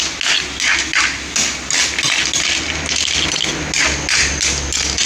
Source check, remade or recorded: recorded